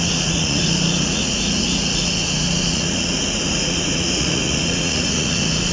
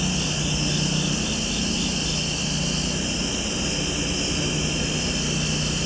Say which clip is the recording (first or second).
second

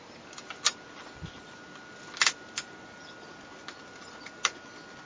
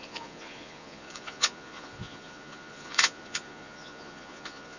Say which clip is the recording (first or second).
first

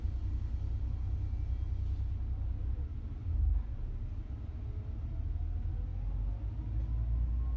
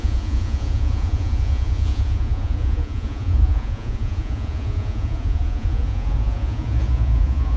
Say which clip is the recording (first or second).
first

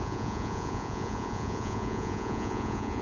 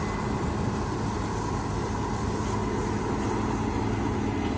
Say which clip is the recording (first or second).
second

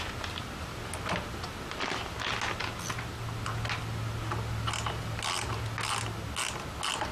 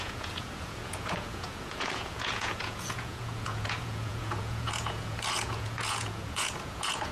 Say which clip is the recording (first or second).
first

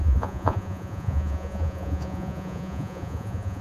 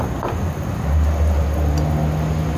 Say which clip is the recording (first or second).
second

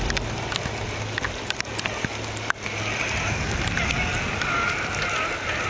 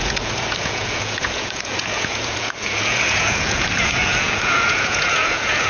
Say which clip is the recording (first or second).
first